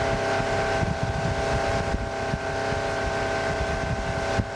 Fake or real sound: real